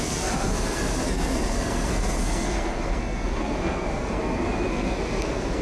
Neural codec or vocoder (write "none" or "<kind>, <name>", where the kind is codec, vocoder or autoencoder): codec, SNAC